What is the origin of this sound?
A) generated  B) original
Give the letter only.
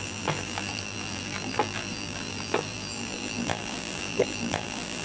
A